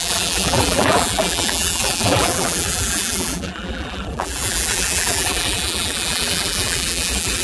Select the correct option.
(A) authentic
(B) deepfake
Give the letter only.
B